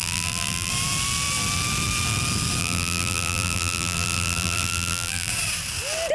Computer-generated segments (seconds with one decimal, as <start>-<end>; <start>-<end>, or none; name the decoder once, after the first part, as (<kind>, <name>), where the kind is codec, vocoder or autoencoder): 0.0-0.7 (vocoder, BigVGAN v2); 2.6-5.3

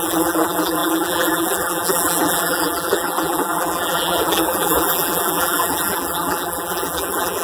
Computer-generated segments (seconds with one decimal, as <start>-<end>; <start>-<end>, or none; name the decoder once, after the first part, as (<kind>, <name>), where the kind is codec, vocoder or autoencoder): 0.0-7.4 (vocoder, BigVGAN v2)

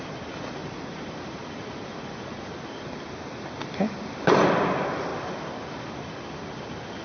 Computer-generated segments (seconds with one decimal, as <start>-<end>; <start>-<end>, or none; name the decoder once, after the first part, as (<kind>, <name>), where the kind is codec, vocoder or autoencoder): 0.6-2.8 (vocoder, BigVGAN v2)

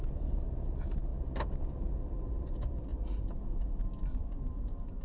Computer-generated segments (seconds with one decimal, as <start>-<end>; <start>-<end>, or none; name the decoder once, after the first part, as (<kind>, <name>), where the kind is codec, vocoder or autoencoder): 0.0-1.1 (vocoder, BigVGAN v2); 1.7-2.9; 4.6-5.0

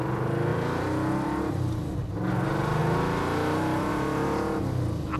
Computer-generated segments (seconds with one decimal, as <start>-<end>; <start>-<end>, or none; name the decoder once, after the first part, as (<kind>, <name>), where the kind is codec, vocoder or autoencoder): 0.5-1.5 (vocoder, BigVGAN v2)

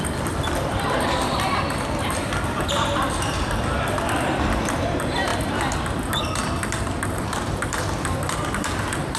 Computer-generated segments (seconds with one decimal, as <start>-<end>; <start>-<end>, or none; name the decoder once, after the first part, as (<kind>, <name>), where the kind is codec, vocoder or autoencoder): 0.0-0.7 (vocoder, BigVGAN v2); 3.3-5.3; 6.1-9.2

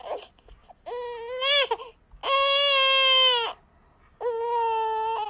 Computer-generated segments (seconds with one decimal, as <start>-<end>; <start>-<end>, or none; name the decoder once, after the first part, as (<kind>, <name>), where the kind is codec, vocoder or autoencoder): none